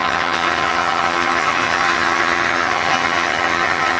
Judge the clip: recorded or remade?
remade